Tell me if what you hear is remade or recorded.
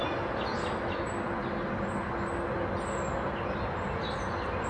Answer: recorded